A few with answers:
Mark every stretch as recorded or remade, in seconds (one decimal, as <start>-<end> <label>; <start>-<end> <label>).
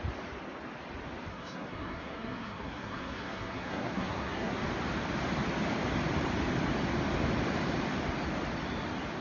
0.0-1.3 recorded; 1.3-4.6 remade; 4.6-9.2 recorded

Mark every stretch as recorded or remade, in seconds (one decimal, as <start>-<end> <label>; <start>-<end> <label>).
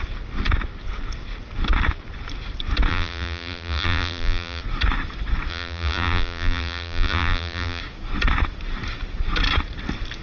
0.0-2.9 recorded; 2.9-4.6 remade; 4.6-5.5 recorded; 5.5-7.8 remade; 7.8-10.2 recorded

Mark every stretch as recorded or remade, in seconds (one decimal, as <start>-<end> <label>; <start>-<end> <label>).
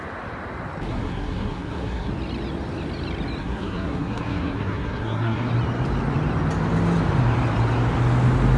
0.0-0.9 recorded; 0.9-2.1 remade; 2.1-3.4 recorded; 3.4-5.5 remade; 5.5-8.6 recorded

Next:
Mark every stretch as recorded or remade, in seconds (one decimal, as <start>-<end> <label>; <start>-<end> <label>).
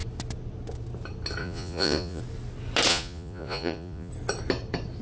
0.0-1.4 recorded; 1.4-2.2 remade; 2.2-2.9 recorded; 2.9-4.1 remade; 4.1-5.0 recorded